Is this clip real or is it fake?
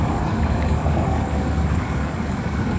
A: fake